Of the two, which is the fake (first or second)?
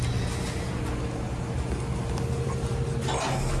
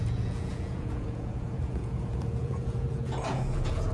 second